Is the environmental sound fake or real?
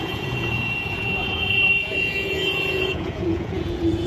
fake